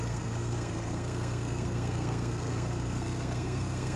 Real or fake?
fake